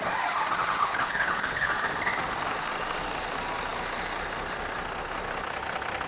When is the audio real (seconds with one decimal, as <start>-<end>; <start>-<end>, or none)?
0.0-0.8; 1.7-6.1